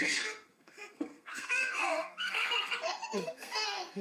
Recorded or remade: remade